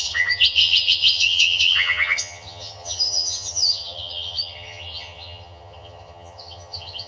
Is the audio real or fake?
fake